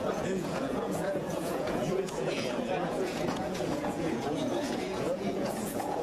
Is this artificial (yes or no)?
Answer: yes